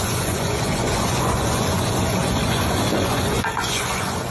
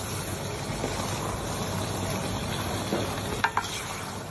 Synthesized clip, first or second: first